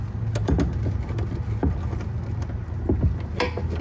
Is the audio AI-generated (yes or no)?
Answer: no